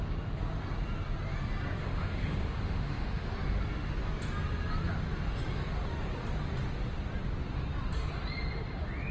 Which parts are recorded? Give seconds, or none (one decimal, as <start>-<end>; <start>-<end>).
0.0-1.8; 3.3-9.1